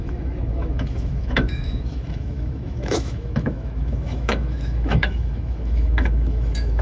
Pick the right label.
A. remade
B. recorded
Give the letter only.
A